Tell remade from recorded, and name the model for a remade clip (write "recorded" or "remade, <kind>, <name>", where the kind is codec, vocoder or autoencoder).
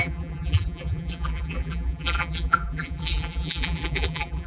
remade, vocoder, BigVGAN v2